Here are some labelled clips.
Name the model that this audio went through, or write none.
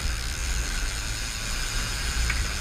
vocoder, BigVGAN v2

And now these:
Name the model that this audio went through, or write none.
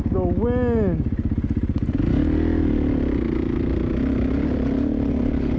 none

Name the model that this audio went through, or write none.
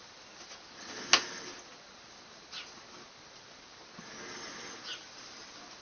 none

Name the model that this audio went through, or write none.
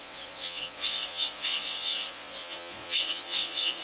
vocoder, Vocos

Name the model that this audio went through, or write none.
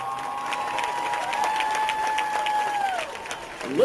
none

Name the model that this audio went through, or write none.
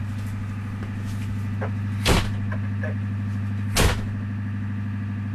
none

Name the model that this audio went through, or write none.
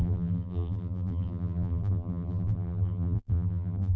vocoder, BigVGAN v2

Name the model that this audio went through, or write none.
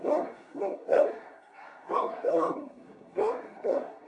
codec, SNAC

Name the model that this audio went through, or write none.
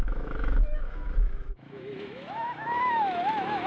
autoencoder, DAC-VAE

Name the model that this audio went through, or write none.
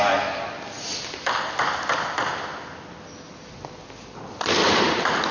none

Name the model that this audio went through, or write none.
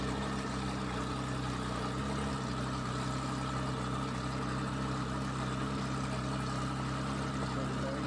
none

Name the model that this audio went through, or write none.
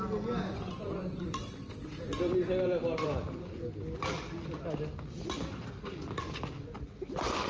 none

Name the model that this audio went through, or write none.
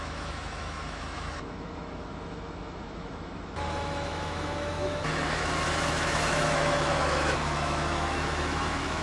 autoencoder, DAC-VAE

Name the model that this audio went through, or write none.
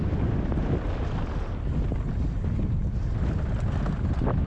none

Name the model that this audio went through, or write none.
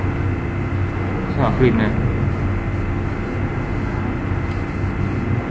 none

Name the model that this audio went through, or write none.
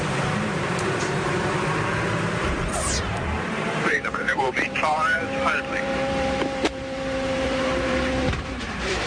vocoder, BigVGAN v2